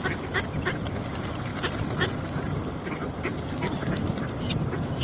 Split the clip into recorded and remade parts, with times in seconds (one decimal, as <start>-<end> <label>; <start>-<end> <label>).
0.0-5.0 recorded